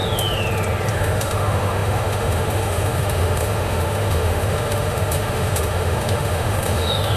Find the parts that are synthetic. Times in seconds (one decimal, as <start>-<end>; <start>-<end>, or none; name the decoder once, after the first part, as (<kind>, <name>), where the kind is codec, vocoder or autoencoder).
0.9-7.2 (autoencoder, DAC-VAE)